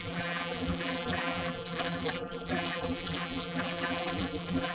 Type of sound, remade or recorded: remade